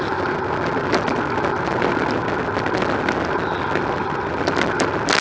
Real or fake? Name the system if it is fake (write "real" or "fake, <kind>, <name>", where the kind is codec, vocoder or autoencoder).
real